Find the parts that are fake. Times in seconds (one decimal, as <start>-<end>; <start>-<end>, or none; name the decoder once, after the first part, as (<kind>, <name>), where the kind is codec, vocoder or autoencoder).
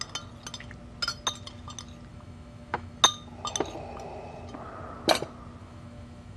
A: 2.1-3.0 (autoencoder, DAC-VAE); 5.6-6.4